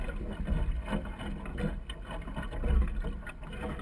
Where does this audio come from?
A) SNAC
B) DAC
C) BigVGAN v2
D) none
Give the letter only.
D